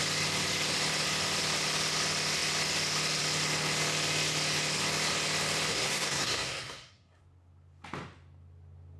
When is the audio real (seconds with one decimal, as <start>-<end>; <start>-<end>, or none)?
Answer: 0.0-5.7; 7.2-9.0